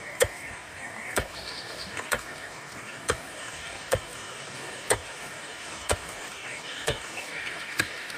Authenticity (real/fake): fake